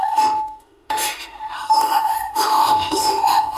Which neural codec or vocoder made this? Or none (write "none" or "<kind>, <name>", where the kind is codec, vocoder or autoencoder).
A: autoencoder, DAC-VAE